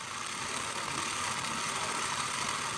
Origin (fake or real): real